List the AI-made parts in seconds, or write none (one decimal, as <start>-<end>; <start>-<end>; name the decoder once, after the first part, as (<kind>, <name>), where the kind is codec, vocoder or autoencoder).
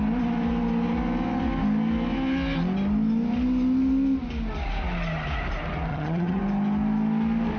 5.9-6.4 (vocoder, HiFi-GAN)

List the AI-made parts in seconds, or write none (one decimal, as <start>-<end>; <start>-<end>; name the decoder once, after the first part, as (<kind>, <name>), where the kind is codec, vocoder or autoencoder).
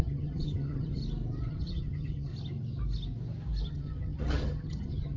0.0-1.0 (vocoder, HiFi-GAN); 1.5-2.3; 3.7-5.2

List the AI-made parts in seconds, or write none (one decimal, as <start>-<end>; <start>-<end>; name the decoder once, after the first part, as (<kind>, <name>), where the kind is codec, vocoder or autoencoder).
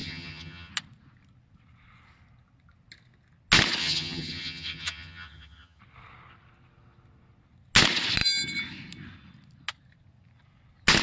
0.0-0.7 (vocoder, HiFi-GAN); 3.8-5.8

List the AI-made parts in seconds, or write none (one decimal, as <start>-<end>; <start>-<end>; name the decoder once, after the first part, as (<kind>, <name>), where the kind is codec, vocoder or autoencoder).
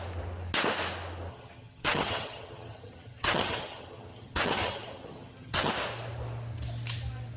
1.3-5.7 (vocoder, HiFi-GAN)